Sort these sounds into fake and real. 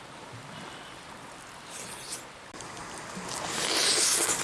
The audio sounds real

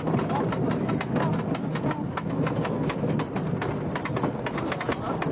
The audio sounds real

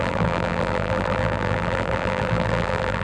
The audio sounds fake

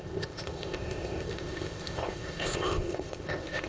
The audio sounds fake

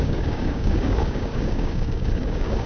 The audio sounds fake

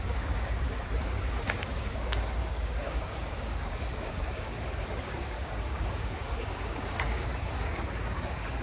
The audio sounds fake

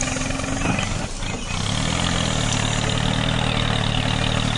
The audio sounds real